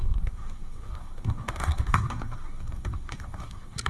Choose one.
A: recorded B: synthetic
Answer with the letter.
B